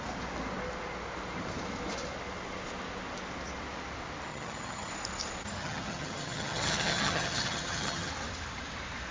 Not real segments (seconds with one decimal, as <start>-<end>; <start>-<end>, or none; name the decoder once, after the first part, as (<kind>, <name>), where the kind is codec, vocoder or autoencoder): 4.3-4.9 (vocoder, HiFi-GAN); 5.6-8.1